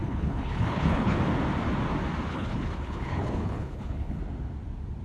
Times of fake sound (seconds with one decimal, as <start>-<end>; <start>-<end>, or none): 0.0-1.2; 2.3-4.2